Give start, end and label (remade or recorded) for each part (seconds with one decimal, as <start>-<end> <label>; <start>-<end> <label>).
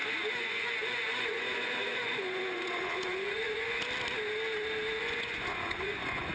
0.0-3.8 remade; 3.8-5.0 recorded; 5.0-6.3 remade